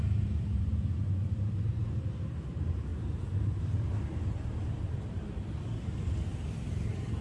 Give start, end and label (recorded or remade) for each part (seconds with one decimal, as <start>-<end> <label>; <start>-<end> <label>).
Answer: 0.0-7.2 remade